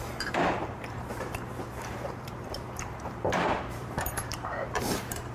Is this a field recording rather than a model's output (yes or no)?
no